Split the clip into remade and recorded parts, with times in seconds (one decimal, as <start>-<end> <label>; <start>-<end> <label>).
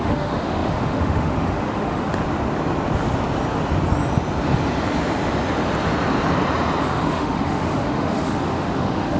0.0-2.1 remade; 2.1-6.8 recorded; 6.8-9.2 remade